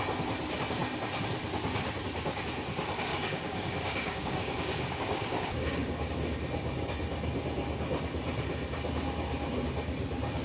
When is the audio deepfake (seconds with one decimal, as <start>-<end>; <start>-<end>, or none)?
3.1-6.1